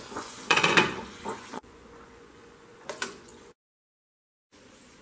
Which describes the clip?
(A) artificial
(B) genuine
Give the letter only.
A